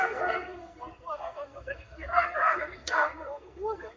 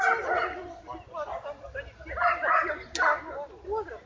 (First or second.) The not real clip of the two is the first